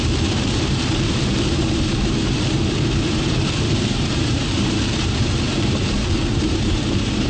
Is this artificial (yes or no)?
yes